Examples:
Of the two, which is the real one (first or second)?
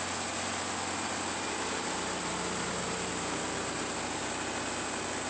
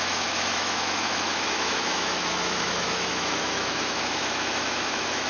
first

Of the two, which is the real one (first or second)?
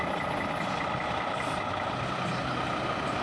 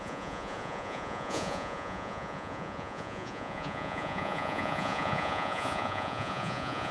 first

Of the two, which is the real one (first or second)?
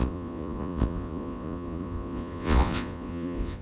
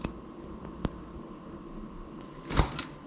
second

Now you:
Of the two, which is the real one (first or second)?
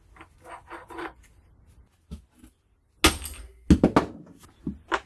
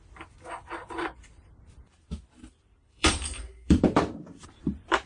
first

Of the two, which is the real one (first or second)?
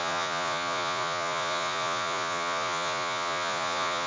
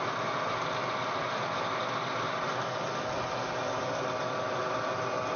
second